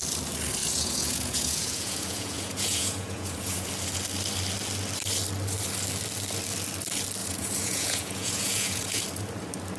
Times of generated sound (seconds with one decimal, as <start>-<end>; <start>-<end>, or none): 0.6-3.7; 7.2-9.0